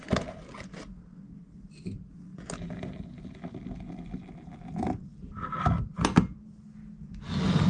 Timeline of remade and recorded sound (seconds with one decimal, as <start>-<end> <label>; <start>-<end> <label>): 0.0-7.7 recorded